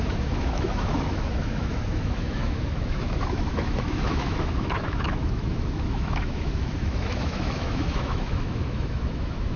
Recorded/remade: remade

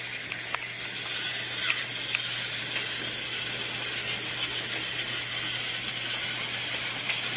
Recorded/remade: recorded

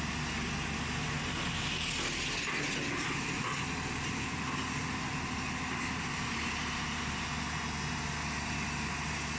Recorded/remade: recorded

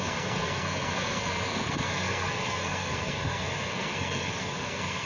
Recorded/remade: remade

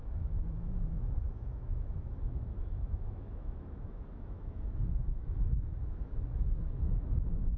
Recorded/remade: remade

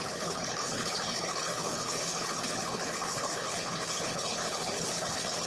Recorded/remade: remade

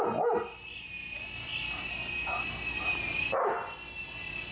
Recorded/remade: recorded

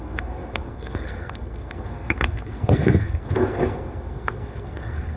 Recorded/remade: remade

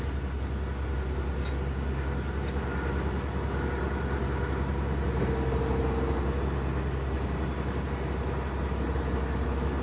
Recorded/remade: recorded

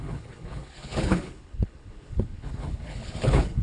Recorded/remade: remade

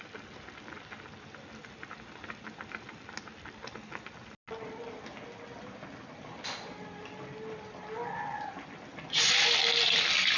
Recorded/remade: recorded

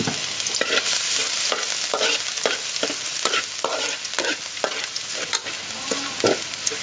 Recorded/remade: recorded